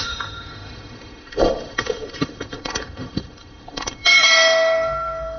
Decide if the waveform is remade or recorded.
remade